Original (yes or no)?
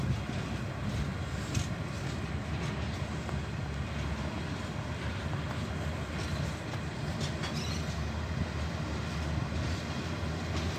yes